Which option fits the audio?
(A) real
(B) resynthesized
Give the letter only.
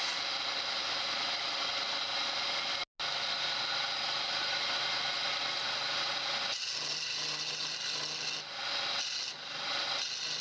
A